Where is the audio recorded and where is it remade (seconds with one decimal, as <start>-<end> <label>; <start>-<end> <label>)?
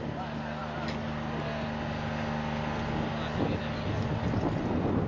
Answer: 0.0-5.1 recorded